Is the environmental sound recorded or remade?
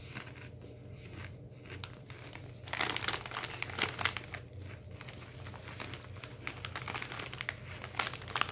recorded